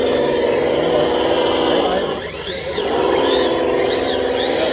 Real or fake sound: real